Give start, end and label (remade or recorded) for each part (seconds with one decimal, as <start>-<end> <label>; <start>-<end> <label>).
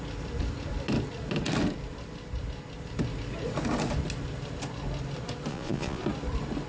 0.0-5.5 recorded; 5.5-6.0 remade; 6.0-6.7 recorded